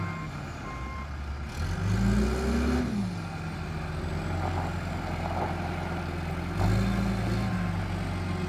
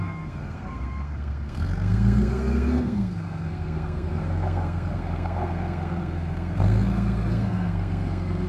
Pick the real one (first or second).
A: first